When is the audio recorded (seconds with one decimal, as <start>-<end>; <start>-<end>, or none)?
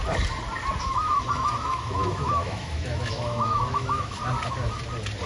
0.0-0.8; 4.2-5.3